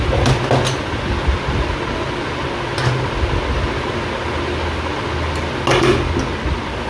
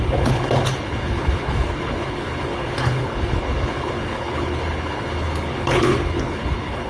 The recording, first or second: first